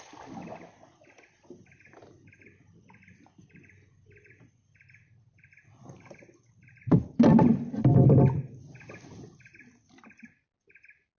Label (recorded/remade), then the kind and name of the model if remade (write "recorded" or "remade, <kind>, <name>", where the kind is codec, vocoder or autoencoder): recorded